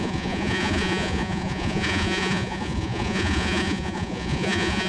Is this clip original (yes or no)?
no